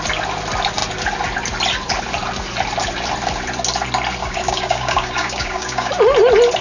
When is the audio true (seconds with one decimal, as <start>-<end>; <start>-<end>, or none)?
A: 0.0-4.2; 5.9-6.6